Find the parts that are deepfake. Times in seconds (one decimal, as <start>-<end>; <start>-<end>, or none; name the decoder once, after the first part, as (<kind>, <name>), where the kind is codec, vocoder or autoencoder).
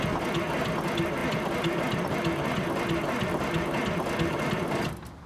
none